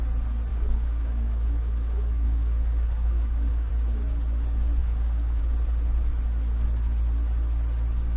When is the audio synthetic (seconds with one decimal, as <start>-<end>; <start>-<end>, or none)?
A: 0.5-3.7; 4.8-5.4